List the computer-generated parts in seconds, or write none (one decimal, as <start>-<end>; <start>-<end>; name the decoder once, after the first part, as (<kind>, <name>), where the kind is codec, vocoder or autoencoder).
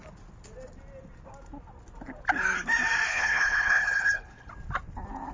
3.1-4.5 (codec, HILCodec)